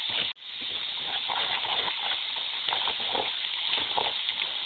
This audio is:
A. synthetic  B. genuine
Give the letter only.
B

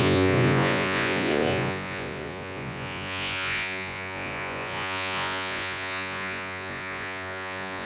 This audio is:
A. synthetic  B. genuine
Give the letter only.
A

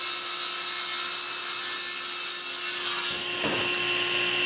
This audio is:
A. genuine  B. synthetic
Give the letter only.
A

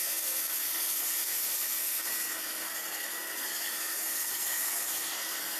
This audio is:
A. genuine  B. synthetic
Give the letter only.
B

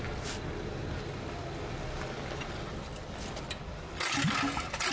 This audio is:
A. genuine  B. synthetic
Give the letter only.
A